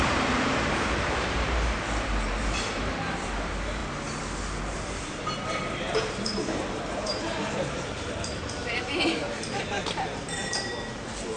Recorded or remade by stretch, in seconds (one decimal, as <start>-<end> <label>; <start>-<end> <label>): 0.0-3.8 remade; 3.8-4.6 recorded; 4.6-11.4 remade